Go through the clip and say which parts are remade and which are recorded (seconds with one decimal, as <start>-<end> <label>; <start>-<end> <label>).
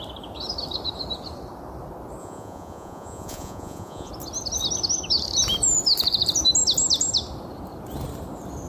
0.0-2.2 recorded; 2.2-4.1 remade; 4.1-8.7 recorded